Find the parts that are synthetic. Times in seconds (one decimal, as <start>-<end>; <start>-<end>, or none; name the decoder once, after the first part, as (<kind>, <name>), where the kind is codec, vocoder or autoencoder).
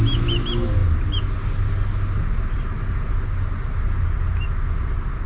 none